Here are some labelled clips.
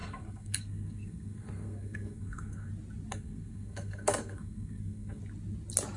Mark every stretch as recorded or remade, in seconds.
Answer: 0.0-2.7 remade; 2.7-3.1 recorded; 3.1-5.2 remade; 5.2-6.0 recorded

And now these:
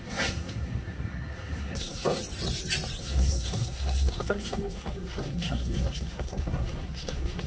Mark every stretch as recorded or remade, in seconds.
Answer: 0.0-2.2 remade; 2.2-3.0 recorded; 3.0-7.5 remade

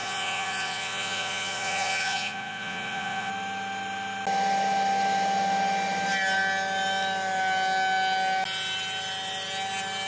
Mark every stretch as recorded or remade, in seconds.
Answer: 0.0-3.3 remade; 3.3-10.1 recorded

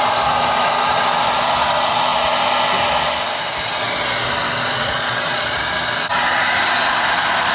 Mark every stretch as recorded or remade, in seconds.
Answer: 0.0-4.7 recorded; 4.7-5.6 remade; 5.6-7.5 recorded